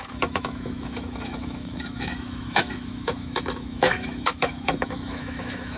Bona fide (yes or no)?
no